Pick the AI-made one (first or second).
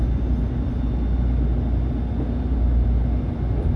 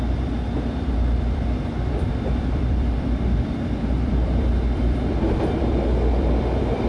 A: second